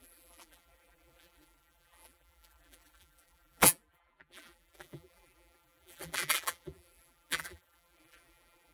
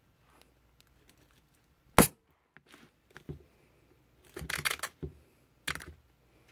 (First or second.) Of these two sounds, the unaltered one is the second